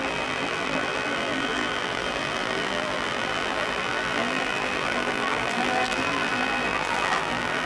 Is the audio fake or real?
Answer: fake